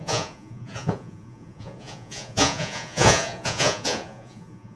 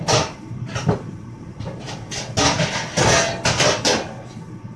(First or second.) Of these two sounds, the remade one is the first